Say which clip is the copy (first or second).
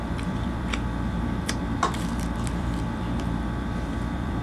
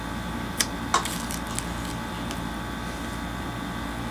first